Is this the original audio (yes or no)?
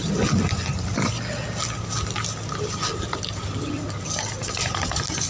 yes